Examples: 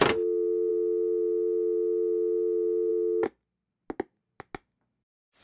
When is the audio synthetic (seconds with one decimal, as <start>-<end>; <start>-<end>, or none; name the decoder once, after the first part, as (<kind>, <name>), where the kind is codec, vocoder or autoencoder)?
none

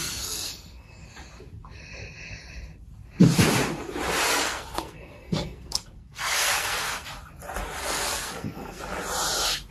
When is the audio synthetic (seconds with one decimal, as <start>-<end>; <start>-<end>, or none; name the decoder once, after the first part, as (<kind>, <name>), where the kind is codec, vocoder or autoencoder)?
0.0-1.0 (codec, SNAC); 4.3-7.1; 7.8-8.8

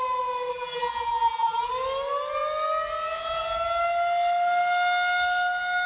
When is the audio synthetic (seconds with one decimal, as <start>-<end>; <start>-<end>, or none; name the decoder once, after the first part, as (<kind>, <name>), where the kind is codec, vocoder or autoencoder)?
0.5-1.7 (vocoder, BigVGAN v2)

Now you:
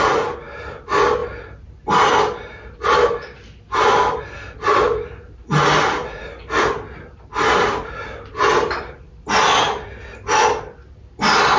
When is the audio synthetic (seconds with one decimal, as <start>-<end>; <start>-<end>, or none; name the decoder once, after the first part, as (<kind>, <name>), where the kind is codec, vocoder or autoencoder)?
none

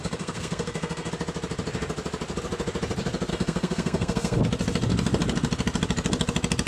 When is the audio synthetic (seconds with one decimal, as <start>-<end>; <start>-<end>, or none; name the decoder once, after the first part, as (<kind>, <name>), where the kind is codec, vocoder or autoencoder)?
0.0-1.1 (codec, SNAC); 3.3-4.4

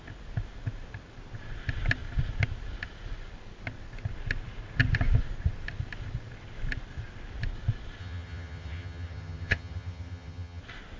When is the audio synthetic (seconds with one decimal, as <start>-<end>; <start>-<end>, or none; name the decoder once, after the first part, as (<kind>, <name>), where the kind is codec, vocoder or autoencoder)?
8.0-10.6 (vocoder, HiFi-GAN)

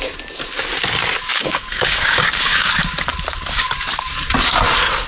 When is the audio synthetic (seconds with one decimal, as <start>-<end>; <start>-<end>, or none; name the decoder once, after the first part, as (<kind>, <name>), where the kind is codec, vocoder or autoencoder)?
1.3-2.7 (codec, DAC)

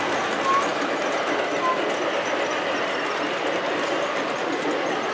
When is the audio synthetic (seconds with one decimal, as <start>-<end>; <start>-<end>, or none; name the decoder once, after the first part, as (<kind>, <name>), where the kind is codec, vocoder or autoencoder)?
none